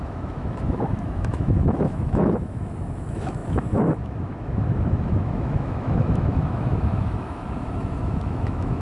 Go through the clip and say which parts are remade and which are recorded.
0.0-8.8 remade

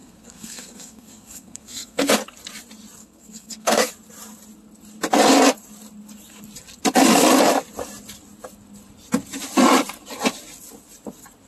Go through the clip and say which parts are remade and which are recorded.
0.0-2.1 remade; 2.1-3.0 recorded; 3.0-3.9 remade; 3.9-11.5 recorded

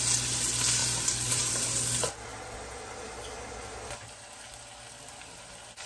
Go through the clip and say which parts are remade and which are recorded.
0.0-5.9 recorded

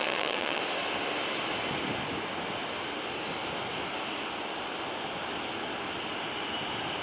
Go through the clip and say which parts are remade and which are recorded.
0.0-0.6 remade; 0.6-7.0 recorded

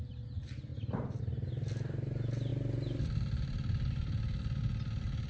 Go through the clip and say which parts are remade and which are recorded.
0.0-5.3 recorded

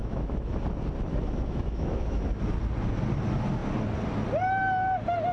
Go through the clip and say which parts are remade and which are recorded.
0.0-0.6 remade; 0.6-1.1 recorded; 1.1-2.3 remade; 2.3-5.3 recorded

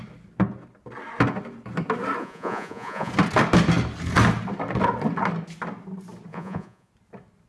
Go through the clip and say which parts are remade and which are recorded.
0.0-2.2 recorded; 2.2-3.1 remade; 3.1-6.3 recorded; 6.3-6.9 remade; 6.9-7.5 recorded

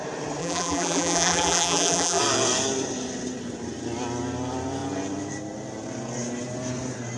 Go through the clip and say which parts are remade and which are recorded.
0.0-0.4 recorded; 0.4-2.2 remade; 2.2-7.2 recorded